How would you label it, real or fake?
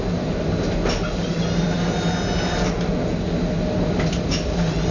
real